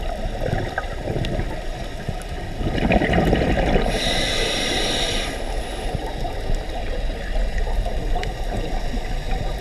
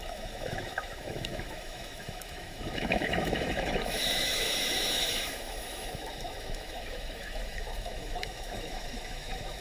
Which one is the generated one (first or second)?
second